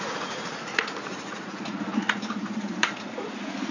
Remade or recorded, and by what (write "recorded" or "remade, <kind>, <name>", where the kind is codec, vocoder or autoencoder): remade, vocoder, Vocos